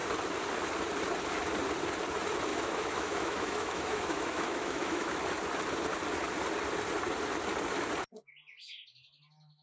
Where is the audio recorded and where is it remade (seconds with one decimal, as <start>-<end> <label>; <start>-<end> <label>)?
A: 0.0-2.5 recorded; 2.5-5.2 remade; 5.2-9.6 recorded